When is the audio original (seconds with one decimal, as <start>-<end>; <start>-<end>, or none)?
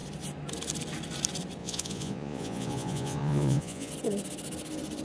0.0-1.6; 3.9-5.0